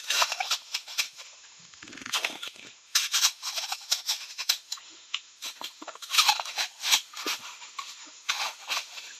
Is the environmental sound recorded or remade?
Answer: remade